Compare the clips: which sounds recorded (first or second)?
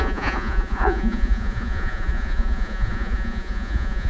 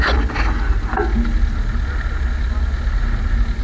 second